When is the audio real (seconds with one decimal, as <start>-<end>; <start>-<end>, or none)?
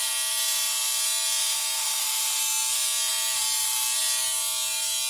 0.0-5.1